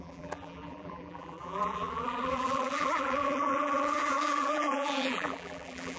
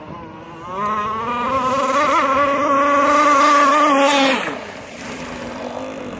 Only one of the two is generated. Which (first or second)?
first